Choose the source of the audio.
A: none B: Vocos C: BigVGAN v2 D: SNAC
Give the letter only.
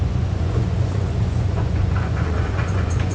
B